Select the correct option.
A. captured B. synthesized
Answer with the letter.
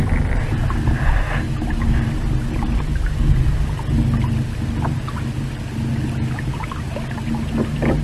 A